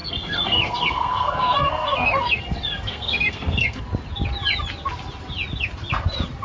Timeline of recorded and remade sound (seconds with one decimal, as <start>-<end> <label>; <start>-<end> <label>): 0.0-3.8 remade; 3.8-6.4 recorded